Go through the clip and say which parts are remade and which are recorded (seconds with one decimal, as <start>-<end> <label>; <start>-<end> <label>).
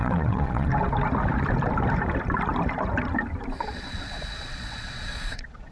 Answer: 0.0-0.7 remade; 0.7-3.6 recorded; 3.6-5.7 remade